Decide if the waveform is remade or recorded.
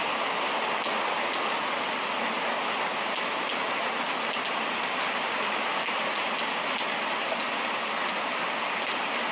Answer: recorded